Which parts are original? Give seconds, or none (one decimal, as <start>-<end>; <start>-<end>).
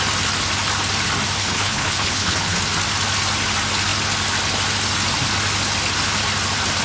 0.0-1.4; 2.6-6.8